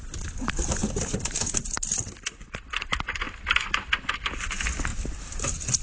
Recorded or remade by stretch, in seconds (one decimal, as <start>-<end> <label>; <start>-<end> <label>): 0.0-5.8 remade